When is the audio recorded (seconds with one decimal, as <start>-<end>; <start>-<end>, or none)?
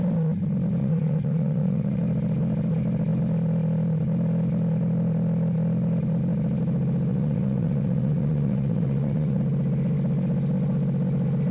0.0-0.8; 2.0-7.1; 9.4-11.5